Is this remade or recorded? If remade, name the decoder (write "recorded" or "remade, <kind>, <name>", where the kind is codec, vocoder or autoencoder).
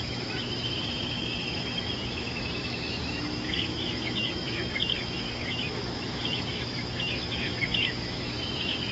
remade, autoencoder, DAC-VAE